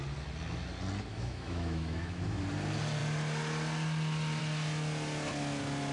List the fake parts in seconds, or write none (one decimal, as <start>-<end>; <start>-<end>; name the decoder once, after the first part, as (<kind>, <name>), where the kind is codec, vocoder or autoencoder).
1.1-2.4 (autoencoder, DAC-VAE)

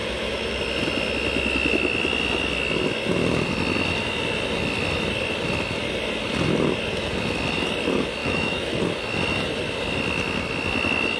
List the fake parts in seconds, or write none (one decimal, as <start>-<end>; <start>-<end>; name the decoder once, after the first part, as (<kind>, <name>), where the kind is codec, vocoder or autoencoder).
0.0-0.6 (autoencoder, DAC-VAE); 8.2-8.8